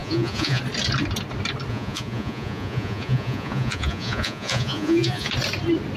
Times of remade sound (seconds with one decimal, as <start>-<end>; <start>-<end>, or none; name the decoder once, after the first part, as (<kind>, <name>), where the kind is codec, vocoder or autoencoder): 0.0-0.6 (vocoder, Vocos); 1.7-5.3